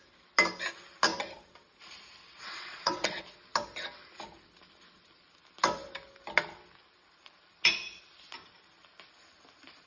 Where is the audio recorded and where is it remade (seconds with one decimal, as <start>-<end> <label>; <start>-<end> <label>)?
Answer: 0.0-2.2 recorded; 2.2-3.2 remade; 3.2-9.9 recorded